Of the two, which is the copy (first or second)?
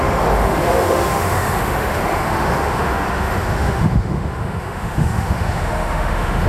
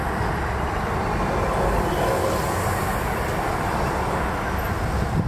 first